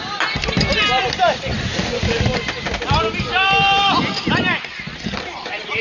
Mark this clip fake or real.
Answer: real